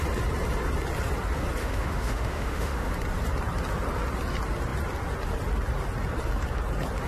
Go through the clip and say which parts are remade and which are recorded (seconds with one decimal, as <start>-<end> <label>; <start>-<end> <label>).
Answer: 0.0-1.6 recorded; 1.6-2.9 remade; 2.9-7.1 recorded